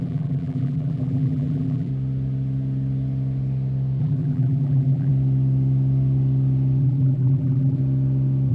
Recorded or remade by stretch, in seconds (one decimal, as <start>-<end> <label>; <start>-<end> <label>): 0.0-1.9 remade; 1.9-4.0 recorded; 4.0-5.1 remade; 5.1-6.8 recorded; 6.8-7.8 remade; 7.8-8.5 recorded